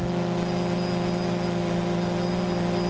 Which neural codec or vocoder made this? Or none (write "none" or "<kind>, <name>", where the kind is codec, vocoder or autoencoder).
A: none